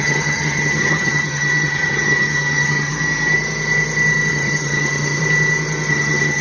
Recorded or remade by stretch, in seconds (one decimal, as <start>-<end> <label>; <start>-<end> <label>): 0.0-2.9 remade; 2.9-4.3 recorded; 4.3-5.2 remade; 5.2-5.9 recorded; 5.9-6.4 remade